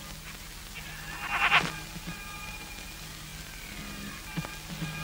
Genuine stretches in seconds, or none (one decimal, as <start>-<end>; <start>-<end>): 0.0-5.0